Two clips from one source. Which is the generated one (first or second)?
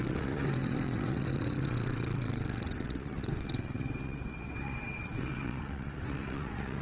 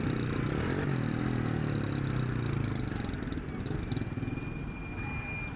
first